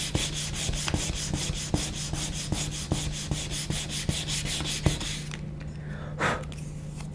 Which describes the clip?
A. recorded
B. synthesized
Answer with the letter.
A